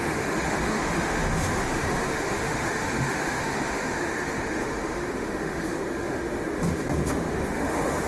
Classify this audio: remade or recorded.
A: remade